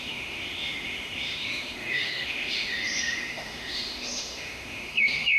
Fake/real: fake